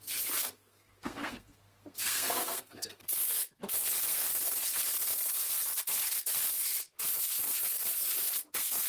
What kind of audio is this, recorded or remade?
remade